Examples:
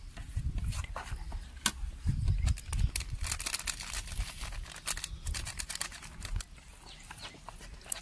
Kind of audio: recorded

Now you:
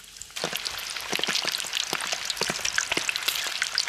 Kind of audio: recorded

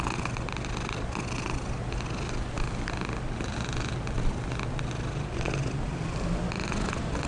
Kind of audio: recorded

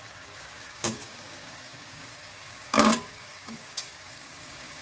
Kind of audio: remade